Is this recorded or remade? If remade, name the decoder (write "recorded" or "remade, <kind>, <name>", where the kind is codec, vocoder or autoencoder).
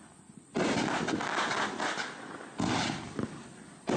recorded